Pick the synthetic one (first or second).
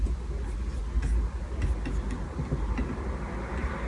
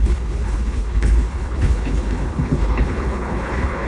second